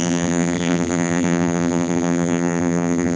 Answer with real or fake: fake